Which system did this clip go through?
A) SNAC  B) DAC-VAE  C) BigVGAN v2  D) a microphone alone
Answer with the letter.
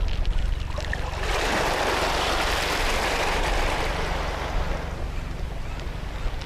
D